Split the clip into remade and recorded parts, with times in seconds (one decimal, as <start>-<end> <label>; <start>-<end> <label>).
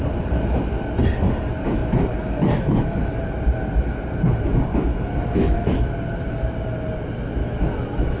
0.0-1.8 recorded; 1.8-3.2 remade; 3.2-4.9 recorded; 4.9-5.9 remade; 5.9-7.4 recorded; 7.4-8.2 remade